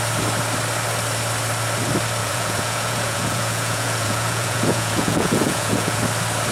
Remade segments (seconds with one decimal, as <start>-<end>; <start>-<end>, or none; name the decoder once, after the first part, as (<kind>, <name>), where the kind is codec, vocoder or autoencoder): 2.2-6.0 (vocoder, Vocos)